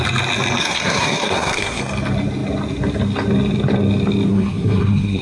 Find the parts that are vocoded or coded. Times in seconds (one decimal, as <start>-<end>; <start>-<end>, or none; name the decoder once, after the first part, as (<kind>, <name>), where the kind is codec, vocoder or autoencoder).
0.6-1.8 (codec, SNAC); 4.3-5.2